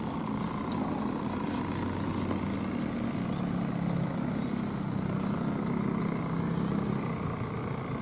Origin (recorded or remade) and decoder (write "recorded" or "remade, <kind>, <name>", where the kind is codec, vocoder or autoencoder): recorded